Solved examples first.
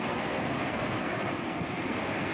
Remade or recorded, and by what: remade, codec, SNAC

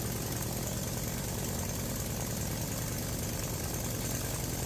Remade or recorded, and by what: recorded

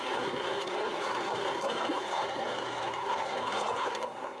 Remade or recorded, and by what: remade, codec, SNAC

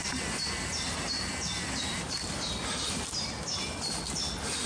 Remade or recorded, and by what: recorded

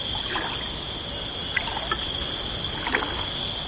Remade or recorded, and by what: recorded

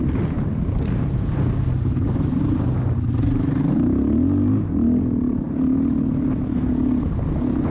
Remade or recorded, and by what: recorded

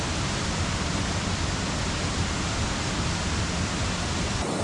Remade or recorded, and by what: recorded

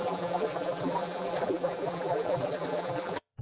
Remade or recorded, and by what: remade, vocoder, BigVGAN v2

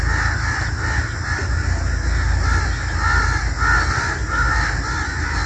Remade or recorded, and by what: recorded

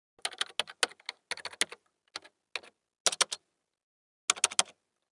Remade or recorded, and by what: recorded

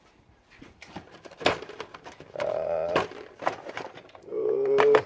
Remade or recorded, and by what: remade, vocoder, BigVGAN v2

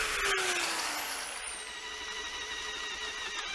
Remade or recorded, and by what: recorded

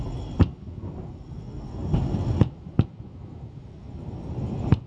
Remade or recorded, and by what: recorded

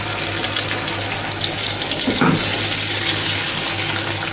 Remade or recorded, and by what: recorded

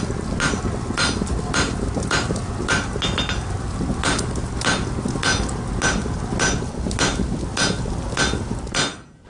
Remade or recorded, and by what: recorded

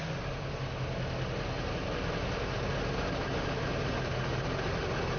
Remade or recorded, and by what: recorded